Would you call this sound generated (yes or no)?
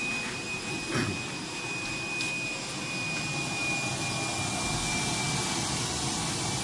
no